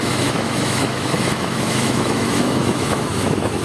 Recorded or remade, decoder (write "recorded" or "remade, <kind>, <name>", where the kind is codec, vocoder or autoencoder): remade, autoencoder, DAC-VAE